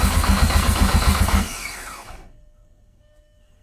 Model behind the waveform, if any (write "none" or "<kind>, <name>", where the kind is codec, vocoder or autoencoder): codec, SNAC